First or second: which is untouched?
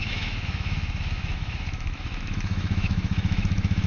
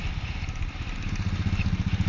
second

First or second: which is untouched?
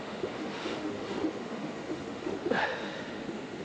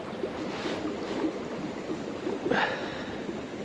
second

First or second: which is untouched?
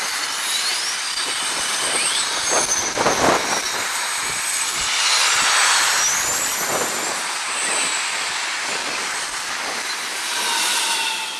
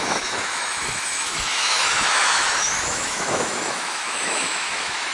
first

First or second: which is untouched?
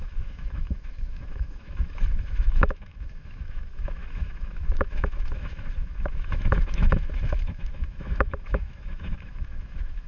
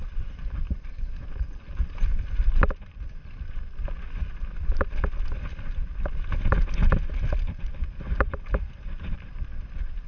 second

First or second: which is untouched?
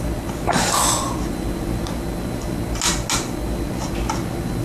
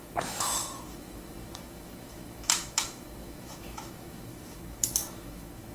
first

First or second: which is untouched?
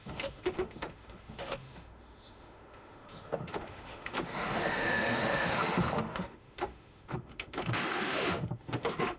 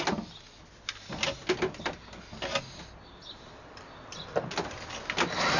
second